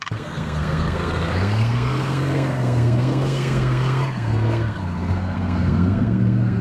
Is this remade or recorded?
remade